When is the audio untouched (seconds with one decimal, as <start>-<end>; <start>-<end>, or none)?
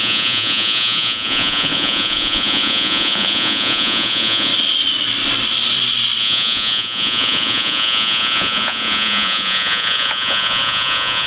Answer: 4.5-6.2